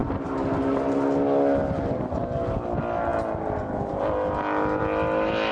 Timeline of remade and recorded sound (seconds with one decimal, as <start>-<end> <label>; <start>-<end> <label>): 0.0-5.5 recorded